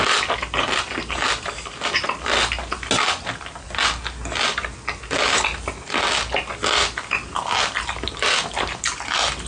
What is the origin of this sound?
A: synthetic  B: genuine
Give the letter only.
B